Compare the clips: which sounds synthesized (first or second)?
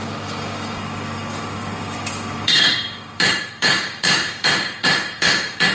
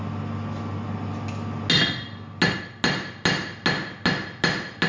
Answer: first